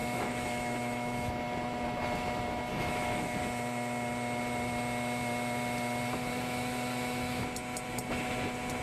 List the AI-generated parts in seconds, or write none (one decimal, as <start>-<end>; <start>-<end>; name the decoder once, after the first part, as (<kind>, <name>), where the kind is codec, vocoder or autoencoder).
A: 0.0-1.3 (autoencoder, DAC-VAE); 2.7-3.4; 6.3-7.4